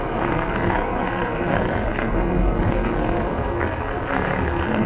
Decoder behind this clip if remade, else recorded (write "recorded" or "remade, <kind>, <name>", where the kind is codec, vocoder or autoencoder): remade, codec, SNAC